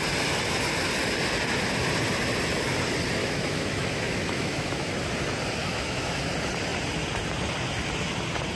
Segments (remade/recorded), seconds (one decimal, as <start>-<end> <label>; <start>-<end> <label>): 0.0-3.2 recorded; 3.2-4.9 remade; 4.9-5.6 recorded; 5.6-6.2 remade; 6.2-8.6 recorded